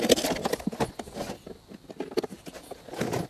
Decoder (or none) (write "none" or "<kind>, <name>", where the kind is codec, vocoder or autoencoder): none